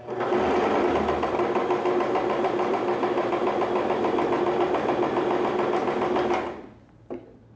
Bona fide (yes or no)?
yes